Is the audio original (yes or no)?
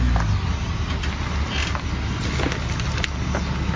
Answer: yes